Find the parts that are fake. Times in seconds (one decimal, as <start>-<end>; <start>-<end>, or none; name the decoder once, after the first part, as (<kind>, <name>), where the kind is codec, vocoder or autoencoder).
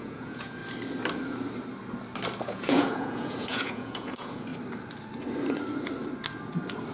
0.0-0.6 (vocoder, Vocos); 2.5-4.5